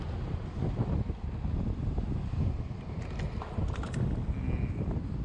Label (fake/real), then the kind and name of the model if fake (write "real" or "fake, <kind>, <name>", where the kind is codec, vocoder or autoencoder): real